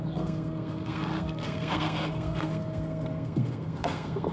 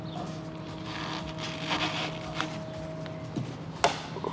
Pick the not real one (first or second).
first